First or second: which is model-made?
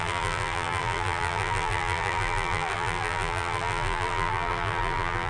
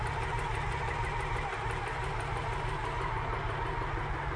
first